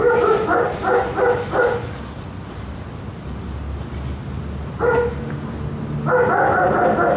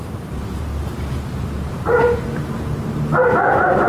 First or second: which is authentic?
first